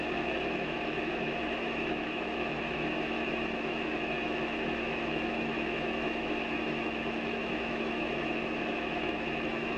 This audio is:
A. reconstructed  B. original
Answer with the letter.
A